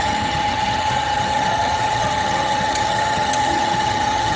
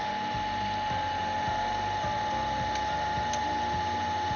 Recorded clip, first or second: second